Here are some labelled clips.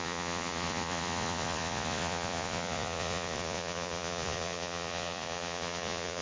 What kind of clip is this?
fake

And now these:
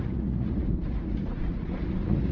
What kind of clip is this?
fake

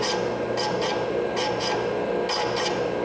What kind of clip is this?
real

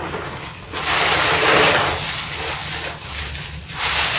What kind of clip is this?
real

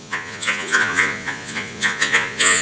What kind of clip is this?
fake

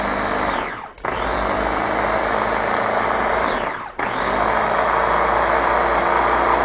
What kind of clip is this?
real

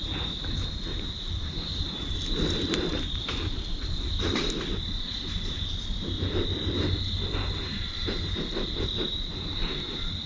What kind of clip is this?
real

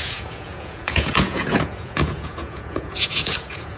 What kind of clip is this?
fake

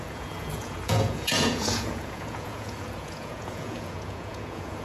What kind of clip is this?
fake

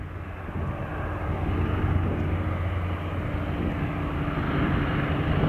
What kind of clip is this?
real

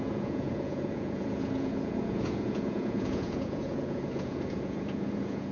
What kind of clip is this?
fake